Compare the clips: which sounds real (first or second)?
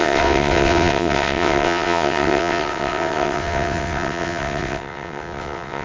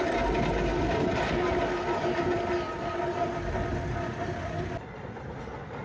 second